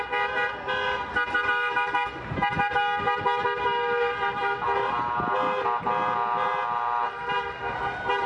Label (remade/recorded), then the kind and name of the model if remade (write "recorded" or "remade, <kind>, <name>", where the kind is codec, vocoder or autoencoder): recorded